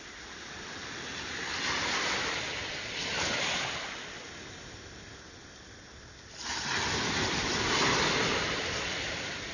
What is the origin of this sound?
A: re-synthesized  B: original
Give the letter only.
B